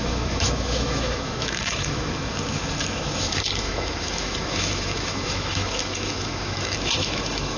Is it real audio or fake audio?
fake